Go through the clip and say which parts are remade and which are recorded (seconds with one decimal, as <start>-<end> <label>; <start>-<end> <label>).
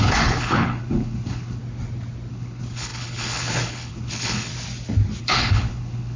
0.0-1.6 remade; 1.6-2.3 recorded; 2.3-4.5 remade; 4.5-5.2 recorded; 5.2-6.2 remade